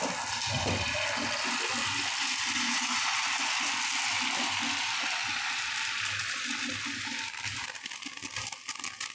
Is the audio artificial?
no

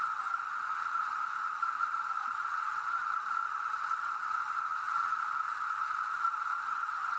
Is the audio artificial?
yes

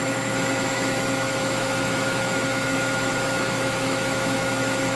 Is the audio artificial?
yes